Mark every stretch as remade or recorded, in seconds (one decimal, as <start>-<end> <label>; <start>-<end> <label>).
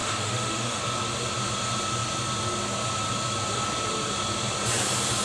0.0-0.8 remade; 0.8-5.2 recorded